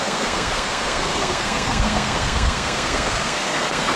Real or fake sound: fake